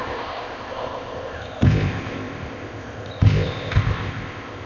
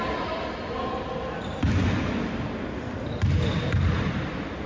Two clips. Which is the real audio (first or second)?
second